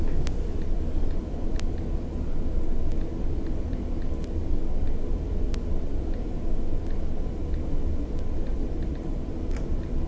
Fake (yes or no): no